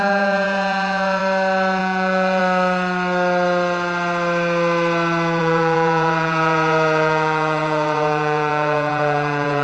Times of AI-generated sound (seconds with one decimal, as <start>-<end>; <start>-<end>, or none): 0.0-1.2; 1.8-2.4; 5.4-9.6